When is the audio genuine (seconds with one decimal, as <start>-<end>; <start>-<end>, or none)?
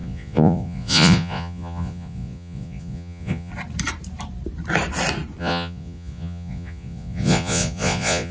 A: 3.5-5.4